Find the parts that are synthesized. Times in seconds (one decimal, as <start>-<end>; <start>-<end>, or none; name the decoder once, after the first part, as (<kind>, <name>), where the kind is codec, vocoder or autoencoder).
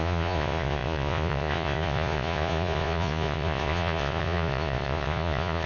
0.0-5.7 (vocoder, Vocos)